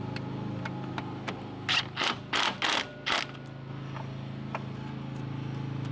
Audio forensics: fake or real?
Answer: real